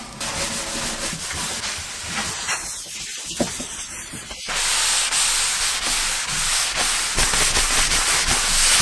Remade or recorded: recorded